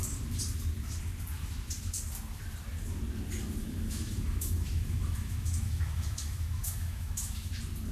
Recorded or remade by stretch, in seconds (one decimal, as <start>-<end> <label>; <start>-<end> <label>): 0.0-3.6 recorded; 3.6-7.5 remade; 7.5-7.9 recorded